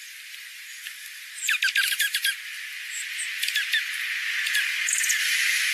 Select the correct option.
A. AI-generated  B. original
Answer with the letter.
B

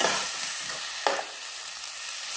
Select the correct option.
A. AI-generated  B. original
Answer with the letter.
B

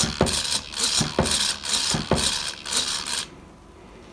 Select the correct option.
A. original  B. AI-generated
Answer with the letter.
A